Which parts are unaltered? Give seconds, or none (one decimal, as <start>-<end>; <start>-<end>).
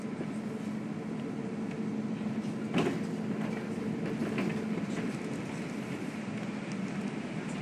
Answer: 0.0-7.6